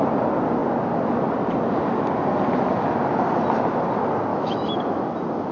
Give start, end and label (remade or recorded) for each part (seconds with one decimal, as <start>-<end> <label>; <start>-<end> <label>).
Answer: 0.0-4.3 recorded; 4.3-5.1 remade; 5.1-5.5 recorded